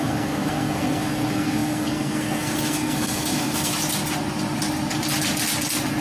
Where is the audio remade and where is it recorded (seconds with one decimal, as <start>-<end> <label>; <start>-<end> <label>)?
0.0-3.7 remade; 3.7-6.0 recorded